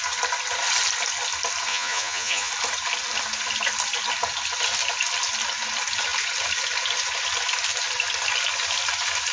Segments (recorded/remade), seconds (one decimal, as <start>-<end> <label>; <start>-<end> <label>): 0.0-1.7 recorded; 1.7-2.5 remade; 2.5-9.3 recorded